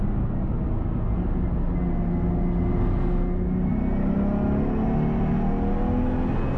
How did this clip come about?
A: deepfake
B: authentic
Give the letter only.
B